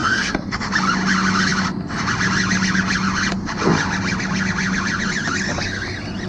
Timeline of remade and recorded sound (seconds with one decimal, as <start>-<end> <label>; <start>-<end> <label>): 0.0-0.7 remade; 0.7-6.3 recorded